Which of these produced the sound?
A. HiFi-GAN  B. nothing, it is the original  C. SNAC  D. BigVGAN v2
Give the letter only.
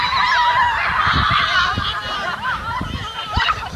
B